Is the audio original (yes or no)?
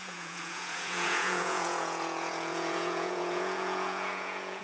no